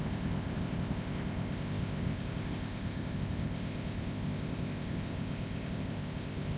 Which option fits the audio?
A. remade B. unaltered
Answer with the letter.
A